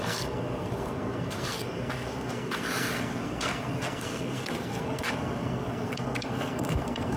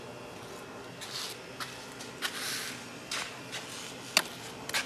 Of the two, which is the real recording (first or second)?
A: second